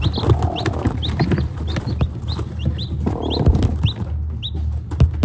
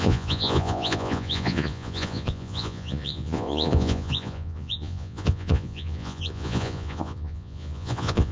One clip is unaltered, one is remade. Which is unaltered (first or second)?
first